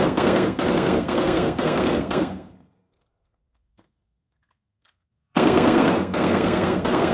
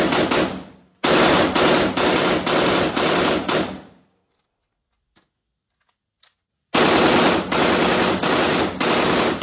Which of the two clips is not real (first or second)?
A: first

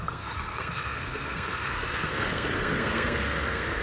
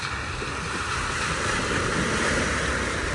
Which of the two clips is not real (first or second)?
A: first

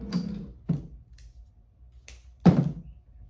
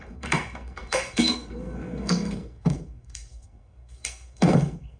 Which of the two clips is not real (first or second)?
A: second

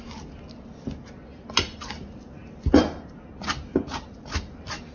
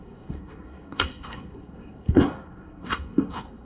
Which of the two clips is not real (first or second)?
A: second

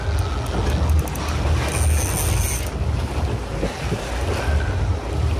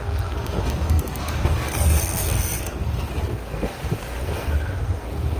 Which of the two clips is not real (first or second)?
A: second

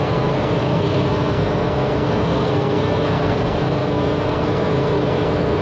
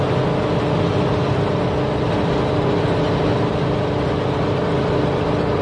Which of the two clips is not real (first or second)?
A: first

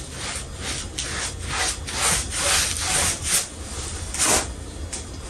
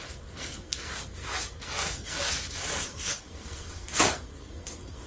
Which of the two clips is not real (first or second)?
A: second